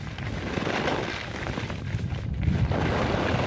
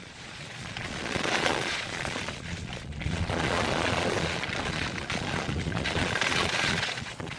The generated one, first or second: second